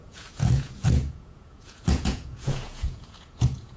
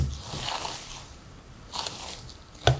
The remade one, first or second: first